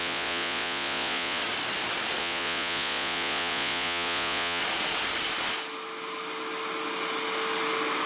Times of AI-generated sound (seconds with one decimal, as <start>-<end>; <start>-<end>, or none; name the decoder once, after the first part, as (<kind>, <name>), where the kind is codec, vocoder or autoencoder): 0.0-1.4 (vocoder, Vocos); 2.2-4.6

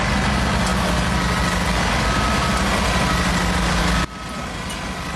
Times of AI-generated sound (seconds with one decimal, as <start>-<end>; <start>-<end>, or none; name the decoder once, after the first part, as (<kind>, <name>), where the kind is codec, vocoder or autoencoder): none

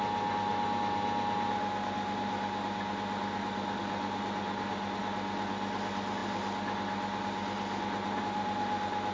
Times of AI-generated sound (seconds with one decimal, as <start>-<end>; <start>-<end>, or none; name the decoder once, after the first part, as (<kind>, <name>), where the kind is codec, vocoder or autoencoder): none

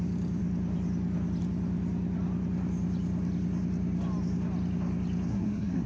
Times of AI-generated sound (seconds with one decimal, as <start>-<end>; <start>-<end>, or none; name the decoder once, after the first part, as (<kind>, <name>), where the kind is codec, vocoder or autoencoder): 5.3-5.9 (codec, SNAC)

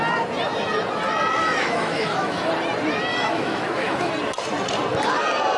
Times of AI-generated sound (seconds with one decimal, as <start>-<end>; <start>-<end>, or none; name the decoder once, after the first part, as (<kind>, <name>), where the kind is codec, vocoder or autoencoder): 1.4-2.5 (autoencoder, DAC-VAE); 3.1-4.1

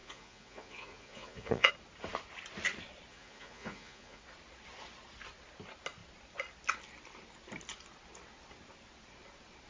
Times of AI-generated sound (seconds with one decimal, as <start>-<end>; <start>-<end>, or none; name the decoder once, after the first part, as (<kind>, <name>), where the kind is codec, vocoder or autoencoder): 0.0-1.7 (vocoder, Vocos); 3.1-4.2

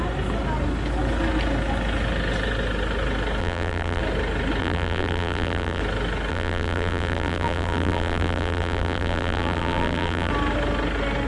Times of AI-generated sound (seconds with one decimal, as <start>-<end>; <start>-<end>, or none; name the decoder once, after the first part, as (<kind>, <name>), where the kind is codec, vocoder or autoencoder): 3.4-4.0 (vocoder, BigVGAN v2); 4.6-5.8; 6.3-10.3